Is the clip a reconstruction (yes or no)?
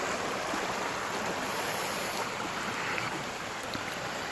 no